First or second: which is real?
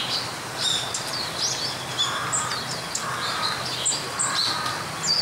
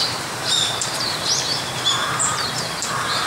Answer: first